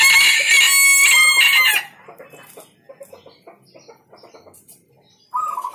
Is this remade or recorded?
recorded